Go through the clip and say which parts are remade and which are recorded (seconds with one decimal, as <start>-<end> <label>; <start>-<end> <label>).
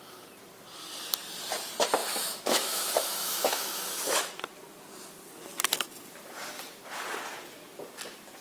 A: 0.0-2.0 recorded; 2.0-4.3 remade; 4.3-8.4 recorded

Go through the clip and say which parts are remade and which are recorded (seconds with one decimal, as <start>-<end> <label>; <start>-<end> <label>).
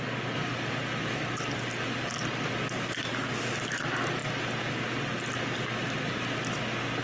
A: 0.0-7.0 recorded